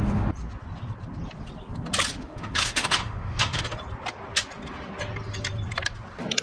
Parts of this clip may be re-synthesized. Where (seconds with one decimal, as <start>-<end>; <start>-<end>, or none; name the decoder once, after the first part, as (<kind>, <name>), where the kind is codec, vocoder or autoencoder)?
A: 2.1-3.6 (autoencoder, DAC-VAE)